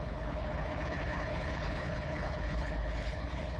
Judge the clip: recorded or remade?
remade